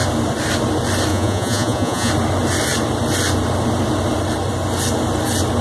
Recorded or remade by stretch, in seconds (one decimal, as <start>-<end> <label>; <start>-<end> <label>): 0.0-1.1 recorded; 1.1-2.1 remade; 2.1-5.6 recorded